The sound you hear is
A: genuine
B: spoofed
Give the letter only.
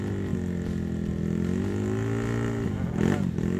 A